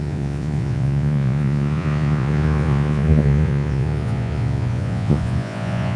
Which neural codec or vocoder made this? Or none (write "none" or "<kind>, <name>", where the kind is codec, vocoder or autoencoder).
vocoder, Vocos